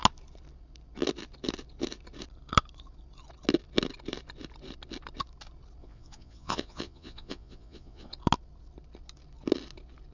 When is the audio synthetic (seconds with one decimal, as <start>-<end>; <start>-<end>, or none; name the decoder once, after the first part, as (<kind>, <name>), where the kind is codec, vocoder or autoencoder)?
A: 5.8-8.1 (vocoder, Vocos)